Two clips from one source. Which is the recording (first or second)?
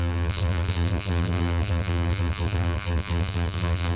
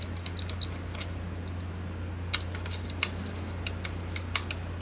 second